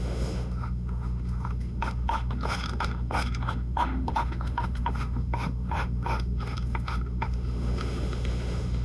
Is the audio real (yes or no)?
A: no